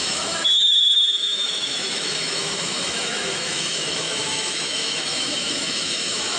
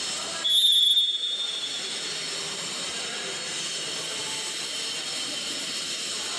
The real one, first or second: second